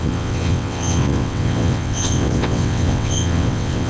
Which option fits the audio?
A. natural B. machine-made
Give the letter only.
B